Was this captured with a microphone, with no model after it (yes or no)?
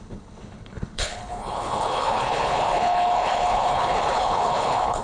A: no